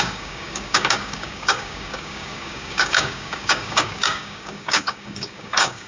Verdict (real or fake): fake